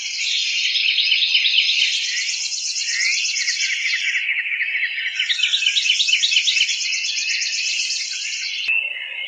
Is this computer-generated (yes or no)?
no